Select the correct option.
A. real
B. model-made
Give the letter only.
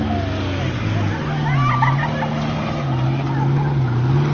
A